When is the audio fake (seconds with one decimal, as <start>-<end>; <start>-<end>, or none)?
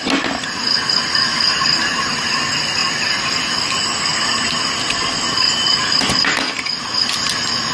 none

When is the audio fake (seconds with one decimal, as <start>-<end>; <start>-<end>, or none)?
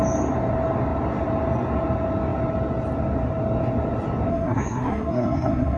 4.3-5.8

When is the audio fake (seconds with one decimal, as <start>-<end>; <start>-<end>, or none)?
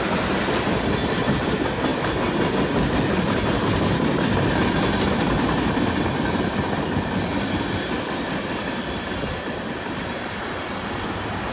none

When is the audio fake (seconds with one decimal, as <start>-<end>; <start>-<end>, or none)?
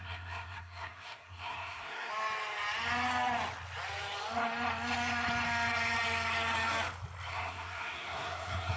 0.0-2.1; 7.3-8.8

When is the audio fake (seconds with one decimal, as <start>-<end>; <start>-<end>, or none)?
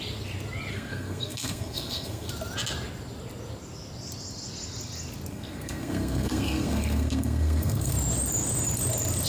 0.7-2.3; 5.3-7.9